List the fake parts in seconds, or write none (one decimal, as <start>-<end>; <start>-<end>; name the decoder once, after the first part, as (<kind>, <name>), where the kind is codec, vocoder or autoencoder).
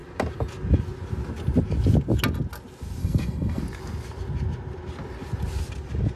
3.0-3.6 (codec, SNAC)